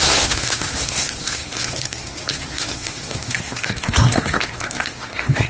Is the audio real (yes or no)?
no